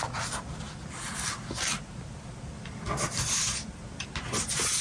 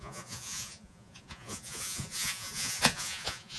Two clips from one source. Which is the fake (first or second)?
second